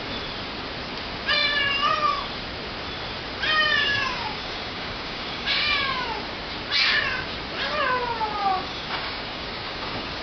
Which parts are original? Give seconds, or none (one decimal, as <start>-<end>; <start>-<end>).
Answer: 0.0-3.8; 6.1-8.4